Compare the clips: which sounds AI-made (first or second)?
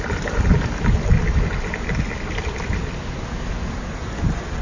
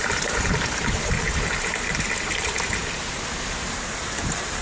second